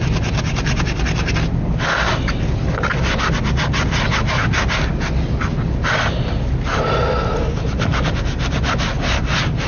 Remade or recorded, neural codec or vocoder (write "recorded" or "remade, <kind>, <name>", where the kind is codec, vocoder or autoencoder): recorded